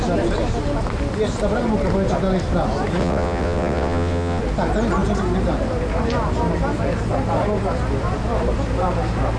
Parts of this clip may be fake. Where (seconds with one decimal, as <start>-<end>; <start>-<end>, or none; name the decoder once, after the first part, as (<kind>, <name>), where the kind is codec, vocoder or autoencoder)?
3.0-4.4 (vocoder, WaveNeXt)